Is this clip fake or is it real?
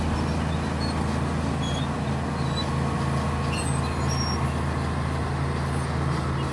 real